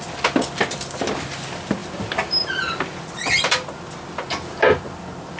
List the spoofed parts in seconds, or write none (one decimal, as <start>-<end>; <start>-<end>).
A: none